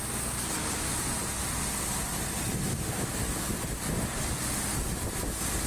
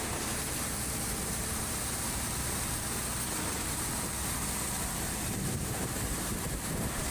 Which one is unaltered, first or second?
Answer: first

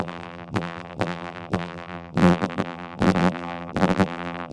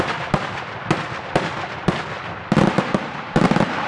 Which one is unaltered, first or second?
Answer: second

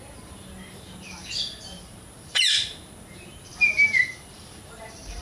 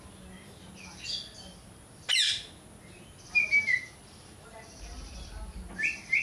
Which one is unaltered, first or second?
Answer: second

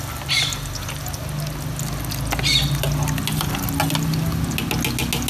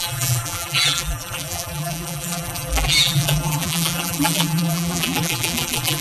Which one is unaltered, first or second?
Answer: first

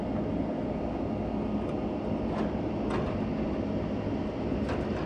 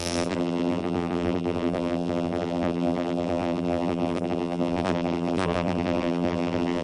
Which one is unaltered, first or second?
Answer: first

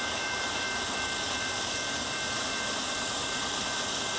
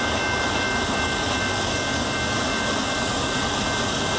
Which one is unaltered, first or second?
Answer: second